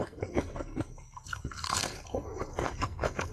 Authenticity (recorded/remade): remade